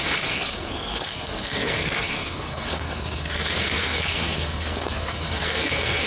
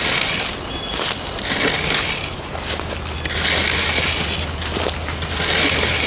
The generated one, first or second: first